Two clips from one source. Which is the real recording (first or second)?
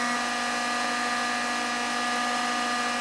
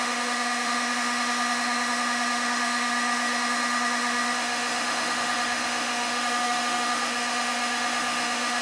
first